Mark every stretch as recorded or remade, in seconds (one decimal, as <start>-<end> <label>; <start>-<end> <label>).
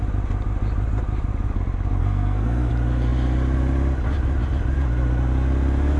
0.0-2.0 recorded; 2.0-2.7 remade; 2.7-6.0 recorded